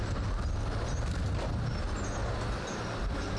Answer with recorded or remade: recorded